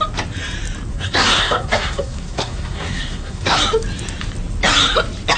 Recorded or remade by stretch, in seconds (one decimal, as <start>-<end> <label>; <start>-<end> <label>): 0.0-0.9 recorded; 0.9-3.6 remade; 3.6-5.4 recorded